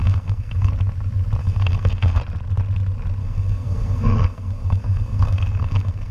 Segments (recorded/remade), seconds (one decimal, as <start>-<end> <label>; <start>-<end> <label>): 0.0-0.7 remade; 0.7-1.4 recorded; 1.4-2.2 remade; 2.2-3.2 recorded; 3.2-6.1 remade